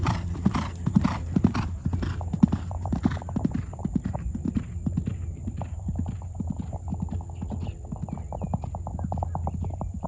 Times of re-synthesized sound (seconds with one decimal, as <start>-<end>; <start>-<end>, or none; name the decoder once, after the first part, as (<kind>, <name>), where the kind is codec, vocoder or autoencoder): 0.0-6.9 (vocoder, BigVGAN v2); 9.6-10.1